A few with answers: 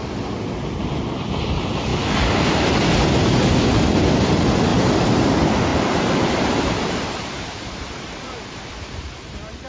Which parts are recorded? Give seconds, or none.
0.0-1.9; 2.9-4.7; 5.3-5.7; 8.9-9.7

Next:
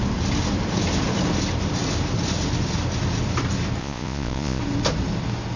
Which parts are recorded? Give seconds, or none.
0.0-3.8; 4.6-5.6